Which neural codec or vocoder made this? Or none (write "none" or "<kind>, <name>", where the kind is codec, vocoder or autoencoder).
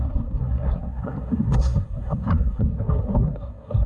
codec, SNAC